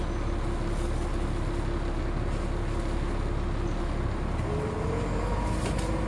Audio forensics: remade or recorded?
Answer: recorded